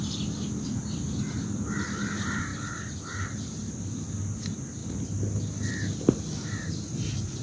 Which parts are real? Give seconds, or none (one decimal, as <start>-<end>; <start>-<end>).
0.0-7.4